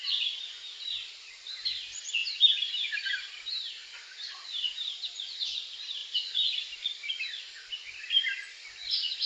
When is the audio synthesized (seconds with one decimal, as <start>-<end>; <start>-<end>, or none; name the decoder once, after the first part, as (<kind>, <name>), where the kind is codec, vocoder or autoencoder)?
2.2-5.0 (vocoder, BigVGAN v2)